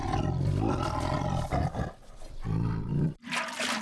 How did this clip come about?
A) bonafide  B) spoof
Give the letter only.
A